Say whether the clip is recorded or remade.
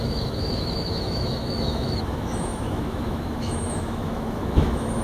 remade